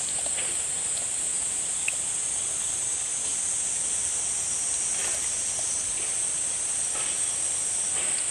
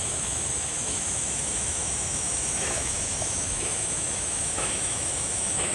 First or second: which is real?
first